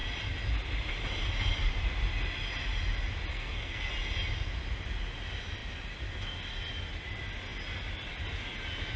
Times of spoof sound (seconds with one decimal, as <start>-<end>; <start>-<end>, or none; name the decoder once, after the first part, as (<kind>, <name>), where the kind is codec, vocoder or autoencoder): 3.3-3.9 (codec, SNAC)